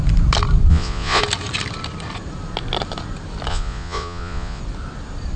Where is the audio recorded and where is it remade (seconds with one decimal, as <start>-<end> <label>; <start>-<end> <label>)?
0.0-0.7 recorded; 0.7-1.2 remade; 1.2-3.5 recorded; 3.5-4.6 remade; 4.6-5.4 recorded